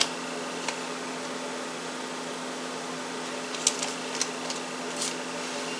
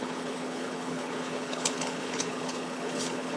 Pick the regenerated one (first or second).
second